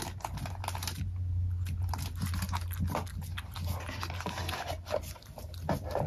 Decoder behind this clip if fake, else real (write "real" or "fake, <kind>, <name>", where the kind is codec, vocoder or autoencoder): real